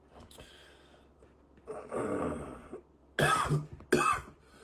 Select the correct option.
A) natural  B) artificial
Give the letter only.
A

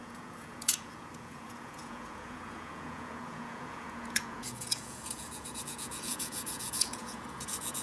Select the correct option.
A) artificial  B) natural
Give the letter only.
A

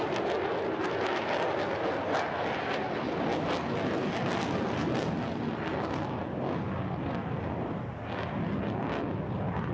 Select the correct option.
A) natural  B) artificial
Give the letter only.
A